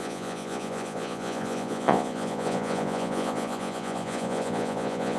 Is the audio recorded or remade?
remade